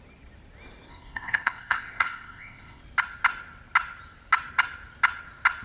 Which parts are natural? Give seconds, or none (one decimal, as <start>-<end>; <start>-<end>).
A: 0.0-0.9; 2.8-5.6